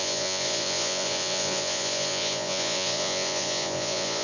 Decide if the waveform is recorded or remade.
remade